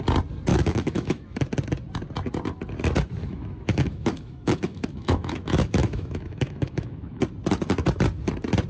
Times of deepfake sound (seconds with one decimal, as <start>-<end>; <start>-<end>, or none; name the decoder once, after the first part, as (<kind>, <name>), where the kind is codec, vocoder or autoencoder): 0.5-1.4 (autoencoder, DAC-VAE); 3.2-7.2